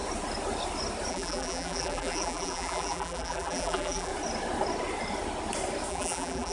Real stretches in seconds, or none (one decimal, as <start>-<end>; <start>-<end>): 0.0-1.1; 4.1-5.9

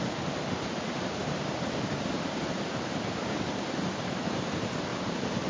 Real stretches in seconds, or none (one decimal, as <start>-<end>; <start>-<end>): 0.0-1.2; 4.5-4.9

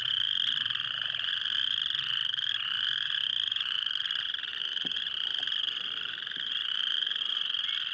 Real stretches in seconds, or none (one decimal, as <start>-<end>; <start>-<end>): 0.0-7.9

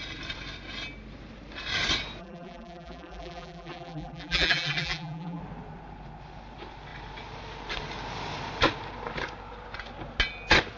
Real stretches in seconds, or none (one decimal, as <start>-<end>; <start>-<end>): 0.0-2.2; 5.4-10.8